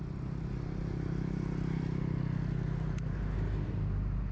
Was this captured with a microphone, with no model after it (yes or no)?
yes